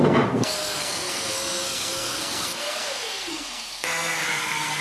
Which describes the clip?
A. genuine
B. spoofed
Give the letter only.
B